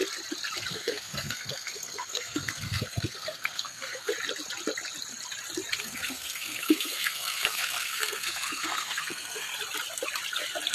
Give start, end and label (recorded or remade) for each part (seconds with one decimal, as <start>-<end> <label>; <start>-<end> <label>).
0.0-0.7 recorded; 0.7-4.1 remade; 4.1-5.8 recorded; 5.8-9.5 remade; 9.5-10.7 recorded